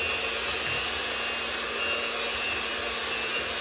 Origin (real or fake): real